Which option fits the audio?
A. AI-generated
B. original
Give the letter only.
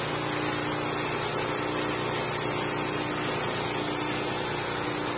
B